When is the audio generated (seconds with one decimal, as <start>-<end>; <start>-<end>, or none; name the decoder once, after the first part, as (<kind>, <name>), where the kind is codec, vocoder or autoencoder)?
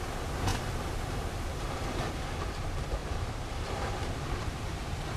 3.0-4.6 (vocoder, BigVGAN v2)